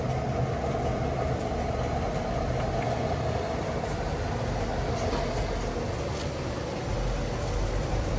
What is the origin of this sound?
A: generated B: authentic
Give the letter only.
B